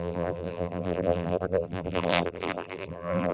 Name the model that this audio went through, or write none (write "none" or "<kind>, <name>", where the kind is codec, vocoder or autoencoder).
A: vocoder, BigVGAN v2